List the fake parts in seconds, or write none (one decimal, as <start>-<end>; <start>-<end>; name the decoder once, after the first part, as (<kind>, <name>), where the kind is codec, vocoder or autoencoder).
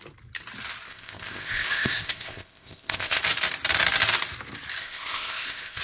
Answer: 0.9-3.2 (codec, ZipCodec); 4.8-5.8